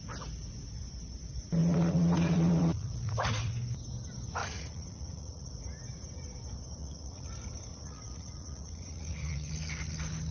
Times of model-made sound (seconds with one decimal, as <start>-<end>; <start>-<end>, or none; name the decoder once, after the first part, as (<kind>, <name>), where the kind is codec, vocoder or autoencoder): 1.6-3.5 (vocoder, Vocos); 4.4-5.5; 6.8-7.3; 7.7-9.5